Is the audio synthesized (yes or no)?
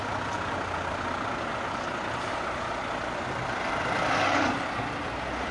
no